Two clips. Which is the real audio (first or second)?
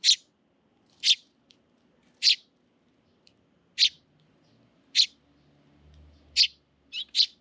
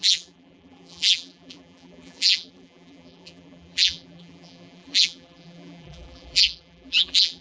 first